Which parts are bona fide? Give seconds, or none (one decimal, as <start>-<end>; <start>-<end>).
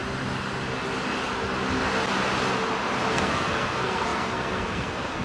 0.0-3.1